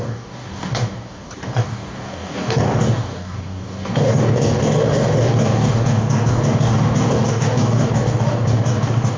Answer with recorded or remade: remade